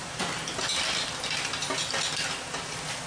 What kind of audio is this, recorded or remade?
recorded